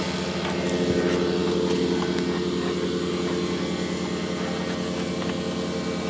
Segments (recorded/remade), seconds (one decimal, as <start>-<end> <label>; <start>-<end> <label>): 0.0-6.1 recorded